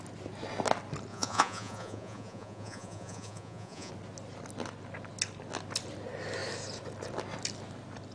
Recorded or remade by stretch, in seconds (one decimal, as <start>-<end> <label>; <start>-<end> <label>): 0.0-1.1 recorded; 1.1-3.9 remade; 3.9-8.1 recorded